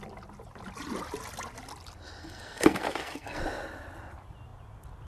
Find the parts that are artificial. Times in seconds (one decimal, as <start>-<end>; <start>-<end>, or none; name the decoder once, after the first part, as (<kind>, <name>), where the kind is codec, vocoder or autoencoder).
2.2-3.4 (codec, SNAC)